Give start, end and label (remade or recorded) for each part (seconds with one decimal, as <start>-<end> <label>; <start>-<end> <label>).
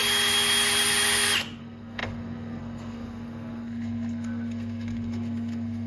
0.0-1.6 recorded; 1.6-5.9 remade